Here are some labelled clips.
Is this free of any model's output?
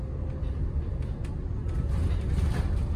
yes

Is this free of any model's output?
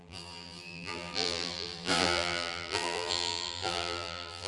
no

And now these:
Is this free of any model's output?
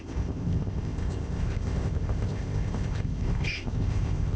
no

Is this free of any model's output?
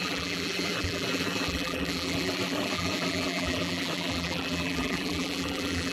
no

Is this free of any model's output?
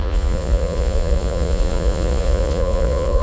no